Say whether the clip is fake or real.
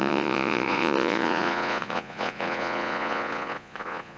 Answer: fake